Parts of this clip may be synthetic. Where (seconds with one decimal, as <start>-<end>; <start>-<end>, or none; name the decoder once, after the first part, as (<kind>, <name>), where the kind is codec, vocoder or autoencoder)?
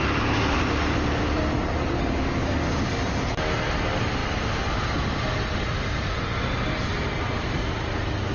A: none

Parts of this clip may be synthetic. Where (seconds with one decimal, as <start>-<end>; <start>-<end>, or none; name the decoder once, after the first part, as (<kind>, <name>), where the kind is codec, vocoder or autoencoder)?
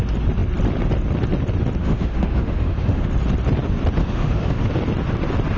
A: 1.8-3.1 (autoencoder, DAC-VAE); 4.0-4.7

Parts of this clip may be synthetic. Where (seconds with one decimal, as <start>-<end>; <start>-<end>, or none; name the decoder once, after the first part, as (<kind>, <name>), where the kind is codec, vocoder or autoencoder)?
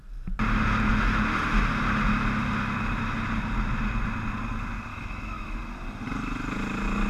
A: 4.9-5.6 (autoencoder, DAC-VAE)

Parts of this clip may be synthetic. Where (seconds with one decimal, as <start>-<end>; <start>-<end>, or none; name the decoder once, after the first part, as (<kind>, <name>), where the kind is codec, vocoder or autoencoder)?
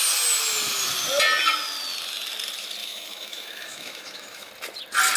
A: 2.8-4.5 (autoencoder, DAC-VAE)